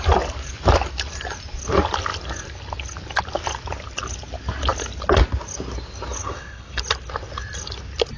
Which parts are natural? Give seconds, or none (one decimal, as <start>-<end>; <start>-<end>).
0.0-6.2; 6.8-8.2